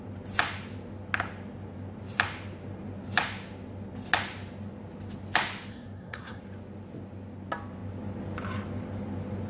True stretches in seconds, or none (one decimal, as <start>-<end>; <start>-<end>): 0.0-5.7; 6.4-9.5